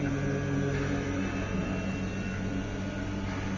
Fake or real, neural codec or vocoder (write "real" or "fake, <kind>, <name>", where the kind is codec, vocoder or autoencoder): real